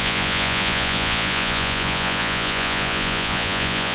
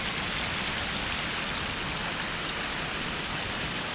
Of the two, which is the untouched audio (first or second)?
second